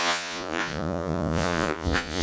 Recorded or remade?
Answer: remade